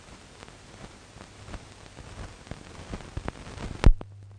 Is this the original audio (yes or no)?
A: yes